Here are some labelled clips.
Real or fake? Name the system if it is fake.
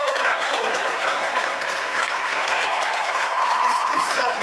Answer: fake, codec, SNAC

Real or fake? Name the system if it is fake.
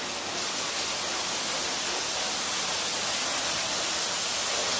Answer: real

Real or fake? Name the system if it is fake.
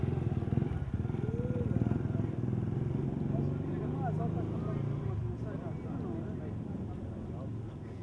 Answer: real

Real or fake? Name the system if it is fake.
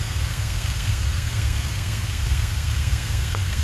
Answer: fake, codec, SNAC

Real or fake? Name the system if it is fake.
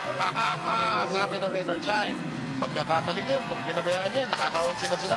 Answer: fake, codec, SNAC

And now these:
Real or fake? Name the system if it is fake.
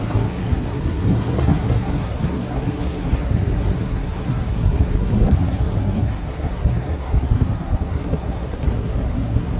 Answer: fake, codec, SNAC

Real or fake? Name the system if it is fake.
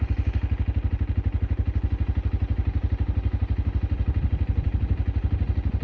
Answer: real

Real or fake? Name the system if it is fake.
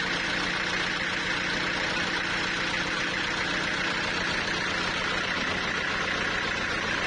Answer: real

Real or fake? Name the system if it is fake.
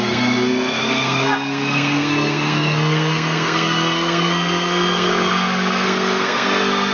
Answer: fake, codec, SNAC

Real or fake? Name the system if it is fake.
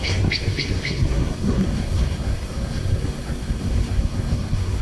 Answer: fake, codec, SNAC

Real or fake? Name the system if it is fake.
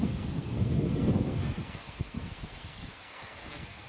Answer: fake, codec, SNAC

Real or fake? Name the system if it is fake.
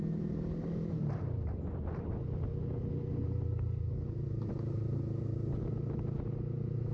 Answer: real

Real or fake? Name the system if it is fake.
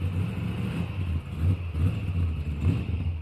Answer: real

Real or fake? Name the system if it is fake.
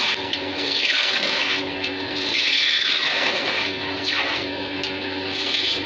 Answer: fake, codec, SNAC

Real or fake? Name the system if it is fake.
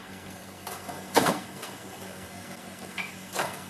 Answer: fake, codec, SNAC